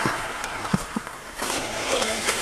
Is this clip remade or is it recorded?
remade